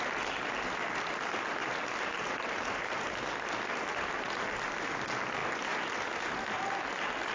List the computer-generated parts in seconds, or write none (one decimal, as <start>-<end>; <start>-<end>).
none